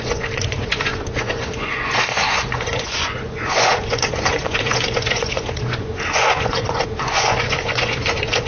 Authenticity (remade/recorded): remade